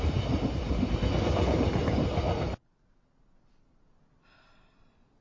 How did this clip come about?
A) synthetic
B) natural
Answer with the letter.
B